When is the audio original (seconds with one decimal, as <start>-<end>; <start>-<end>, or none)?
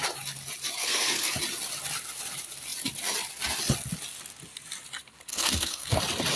0.0-0.8; 1.3-5.3; 6.0-6.4